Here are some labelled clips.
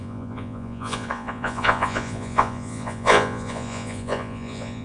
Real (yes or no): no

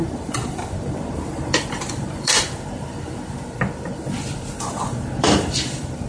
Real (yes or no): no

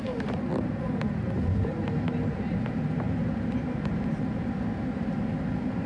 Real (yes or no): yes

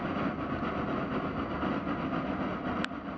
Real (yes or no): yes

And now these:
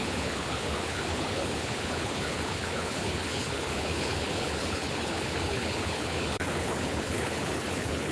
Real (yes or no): no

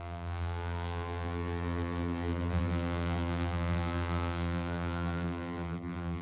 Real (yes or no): no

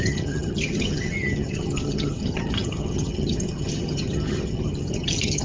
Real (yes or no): no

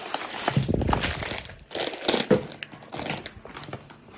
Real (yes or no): yes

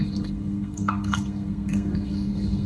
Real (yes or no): no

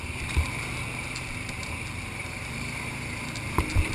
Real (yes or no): yes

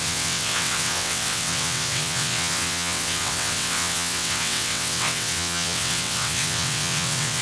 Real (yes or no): no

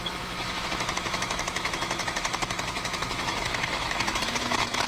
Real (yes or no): no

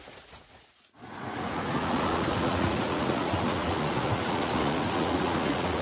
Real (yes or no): no